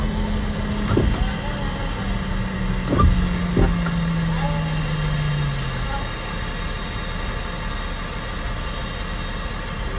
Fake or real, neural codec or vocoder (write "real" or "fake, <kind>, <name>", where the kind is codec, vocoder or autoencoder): real